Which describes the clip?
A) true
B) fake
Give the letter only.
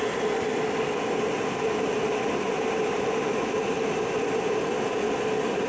A